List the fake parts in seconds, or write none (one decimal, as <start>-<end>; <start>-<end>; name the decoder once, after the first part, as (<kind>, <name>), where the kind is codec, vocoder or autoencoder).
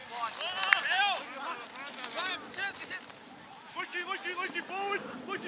none